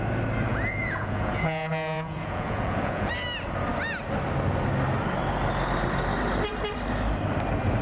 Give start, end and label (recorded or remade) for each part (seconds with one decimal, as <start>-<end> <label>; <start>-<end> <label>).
0.0-0.5 recorded; 0.5-3.1 remade; 3.1-7.8 recorded